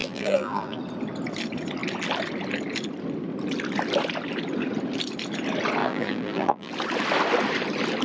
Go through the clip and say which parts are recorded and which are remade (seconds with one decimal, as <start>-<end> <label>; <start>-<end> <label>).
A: 0.0-0.8 remade; 0.8-5.8 recorded; 5.8-6.7 remade; 6.7-8.0 recorded